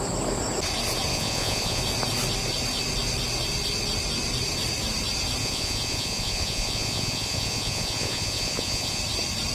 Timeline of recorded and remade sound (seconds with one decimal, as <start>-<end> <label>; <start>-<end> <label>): 0.0-1.1 recorded; 1.1-1.8 remade; 1.8-5.4 recorded; 5.4-9.0 remade; 9.0-9.5 recorded